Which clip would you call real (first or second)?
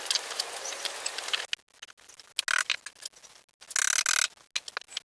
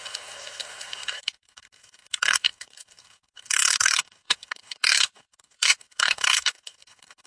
first